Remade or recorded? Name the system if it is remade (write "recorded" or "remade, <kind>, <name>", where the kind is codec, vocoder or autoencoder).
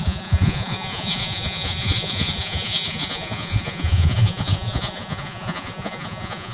remade, vocoder, Vocos